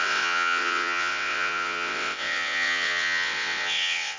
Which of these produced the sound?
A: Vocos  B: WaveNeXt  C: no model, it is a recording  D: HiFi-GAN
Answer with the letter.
B